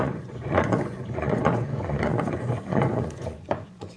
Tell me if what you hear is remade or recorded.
remade